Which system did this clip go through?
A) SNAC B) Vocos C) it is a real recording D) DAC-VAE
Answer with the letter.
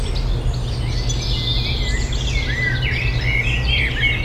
C